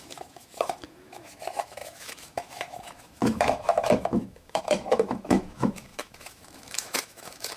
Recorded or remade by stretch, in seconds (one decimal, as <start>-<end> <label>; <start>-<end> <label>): 0.0-7.6 remade